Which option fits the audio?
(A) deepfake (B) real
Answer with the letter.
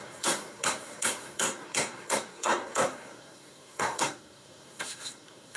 A